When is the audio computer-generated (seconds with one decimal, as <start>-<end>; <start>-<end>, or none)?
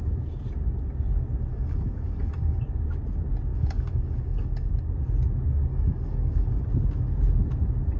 1.5-2.6; 3.5-4.7; 5.7-6.6